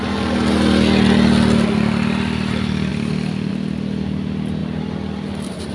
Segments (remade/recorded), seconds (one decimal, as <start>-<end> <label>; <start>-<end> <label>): 0.0-5.7 recorded

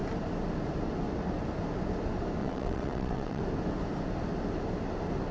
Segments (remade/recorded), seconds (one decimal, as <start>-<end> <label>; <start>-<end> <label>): 0.0-2.4 recorded; 2.4-3.4 remade; 3.4-5.3 recorded